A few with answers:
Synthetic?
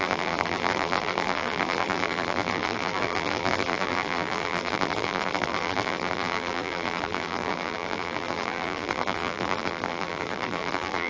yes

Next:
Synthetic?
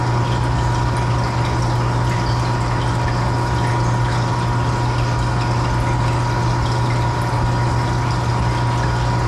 no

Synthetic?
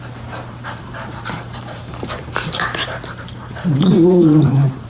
yes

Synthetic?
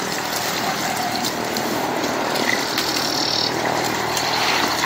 yes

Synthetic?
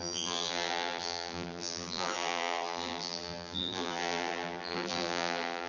yes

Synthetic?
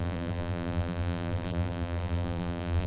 yes